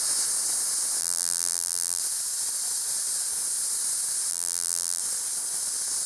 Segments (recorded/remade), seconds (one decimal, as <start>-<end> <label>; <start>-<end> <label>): 0.0-1.0 recorded; 1.0-2.0 remade; 2.0-4.3 recorded; 4.3-5.0 remade; 5.0-6.1 recorded

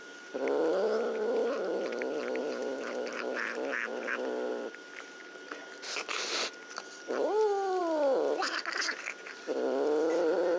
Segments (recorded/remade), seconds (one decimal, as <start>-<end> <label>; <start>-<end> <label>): 0.0-1.4 remade; 1.4-2.4 recorded; 2.4-6.1 remade; 6.1-7.8 recorded; 7.8-10.6 remade